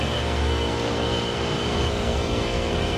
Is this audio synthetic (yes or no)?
yes